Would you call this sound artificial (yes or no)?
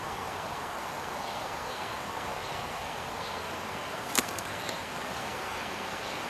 yes